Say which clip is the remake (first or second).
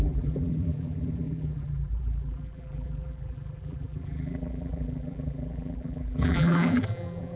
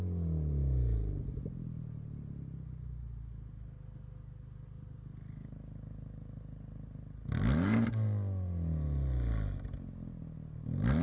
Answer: first